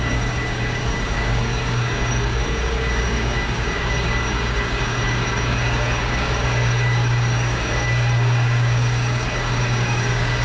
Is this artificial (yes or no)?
yes